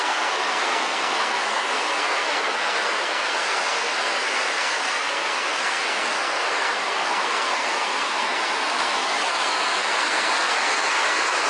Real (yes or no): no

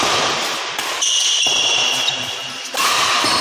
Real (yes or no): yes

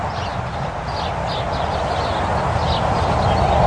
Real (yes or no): yes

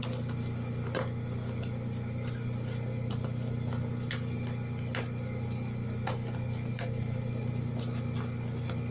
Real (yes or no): yes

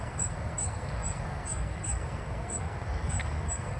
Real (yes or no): no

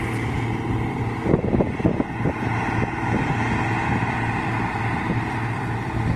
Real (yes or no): yes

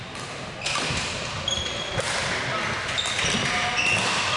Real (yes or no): yes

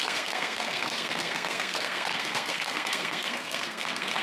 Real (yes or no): no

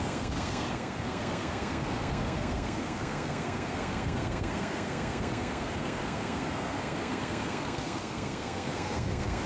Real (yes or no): no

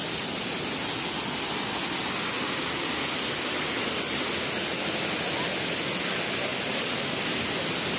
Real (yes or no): yes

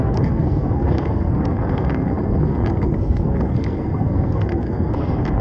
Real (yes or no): no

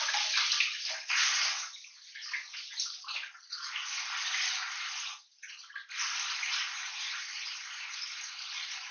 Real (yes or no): yes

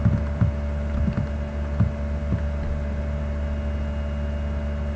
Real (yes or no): yes